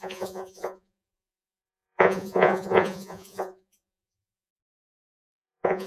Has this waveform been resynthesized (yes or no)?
yes